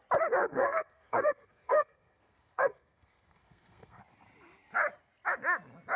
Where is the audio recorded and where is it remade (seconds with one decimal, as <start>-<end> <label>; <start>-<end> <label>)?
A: 0.0-0.4 recorded; 0.4-4.0 remade; 4.0-6.0 recorded